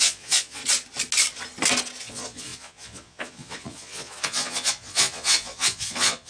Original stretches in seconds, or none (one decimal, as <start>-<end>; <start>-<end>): 0.6-2.0